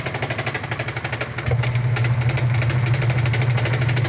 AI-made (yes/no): no